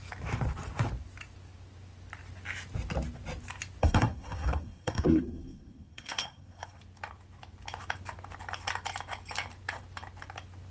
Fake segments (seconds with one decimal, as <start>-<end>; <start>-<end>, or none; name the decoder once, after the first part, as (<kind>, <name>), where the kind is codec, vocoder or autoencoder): 3.8-6.8 (codec, SNAC)